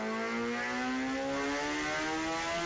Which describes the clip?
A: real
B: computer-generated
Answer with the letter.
A